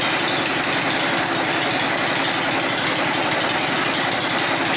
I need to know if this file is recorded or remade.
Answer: recorded